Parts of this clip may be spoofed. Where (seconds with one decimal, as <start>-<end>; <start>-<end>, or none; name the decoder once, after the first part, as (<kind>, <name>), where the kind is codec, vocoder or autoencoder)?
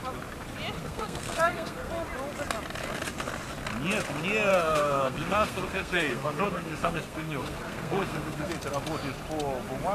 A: 0.8-1.9 (codec, SNAC); 4.5-8.5